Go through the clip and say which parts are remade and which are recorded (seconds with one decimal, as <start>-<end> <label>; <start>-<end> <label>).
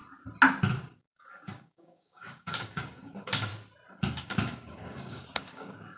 0.0-1.0 recorded; 1.0-3.5 remade; 3.5-4.0 recorded; 4.0-6.0 remade